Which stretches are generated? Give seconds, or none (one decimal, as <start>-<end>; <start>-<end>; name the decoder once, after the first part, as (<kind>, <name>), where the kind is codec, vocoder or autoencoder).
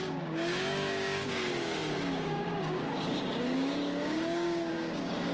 0.0-5.3 (codec, DAC)